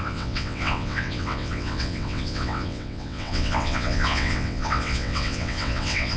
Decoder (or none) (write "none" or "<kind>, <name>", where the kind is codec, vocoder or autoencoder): vocoder, WaveNeXt